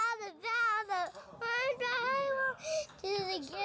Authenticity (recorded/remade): recorded